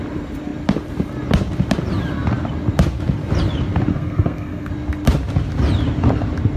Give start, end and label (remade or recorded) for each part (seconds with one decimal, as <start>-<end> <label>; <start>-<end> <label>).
0.0-3.9 recorded; 3.9-4.7 remade; 4.7-6.6 recorded